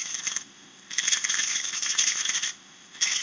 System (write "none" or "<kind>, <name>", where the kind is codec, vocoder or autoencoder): codec, ZipCodec